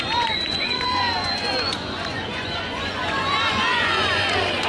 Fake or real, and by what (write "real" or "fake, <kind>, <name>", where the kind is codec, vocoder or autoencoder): fake, vocoder, Vocos